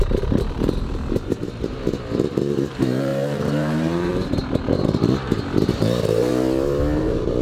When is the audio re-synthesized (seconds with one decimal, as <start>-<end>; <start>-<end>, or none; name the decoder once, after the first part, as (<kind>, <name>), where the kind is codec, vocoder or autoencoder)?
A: 0.0-1.4 (vocoder, BigVGAN v2); 2.4-6.3; 7.0-7.4